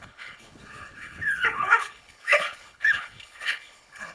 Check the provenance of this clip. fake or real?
fake